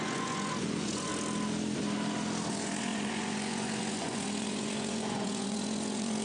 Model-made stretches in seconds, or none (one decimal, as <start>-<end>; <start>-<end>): 0.0-1.1; 2.5-6.2